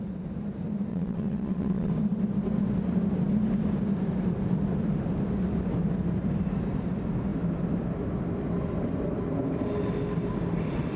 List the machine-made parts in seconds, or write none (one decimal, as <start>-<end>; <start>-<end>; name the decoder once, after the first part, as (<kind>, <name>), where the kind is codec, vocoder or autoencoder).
0.9-1.9 (vocoder, Vocos)